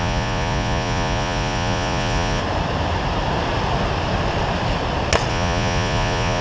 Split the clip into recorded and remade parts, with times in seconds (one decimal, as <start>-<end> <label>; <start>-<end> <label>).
0.0-2.4 remade; 2.4-5.3 recorded; 5.3-6.4 remade